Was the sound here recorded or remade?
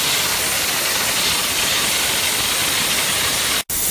recorded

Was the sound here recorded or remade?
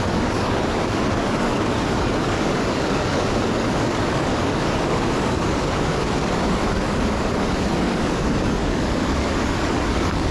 remade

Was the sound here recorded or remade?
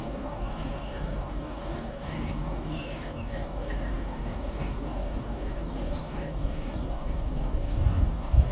remade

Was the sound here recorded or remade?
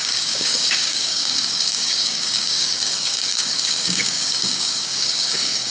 remade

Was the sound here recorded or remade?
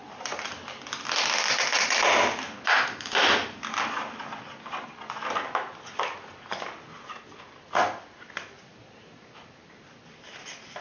recorded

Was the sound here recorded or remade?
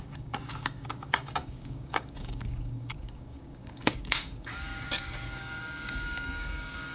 remade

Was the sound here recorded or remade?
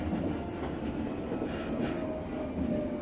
recorded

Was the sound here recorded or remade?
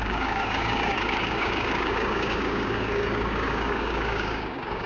remade